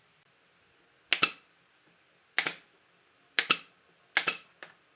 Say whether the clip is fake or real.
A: real